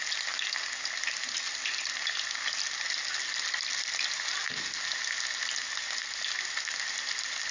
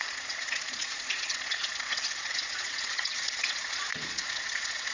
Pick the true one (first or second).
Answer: first